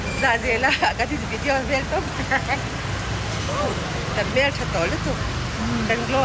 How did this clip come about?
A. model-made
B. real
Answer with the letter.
B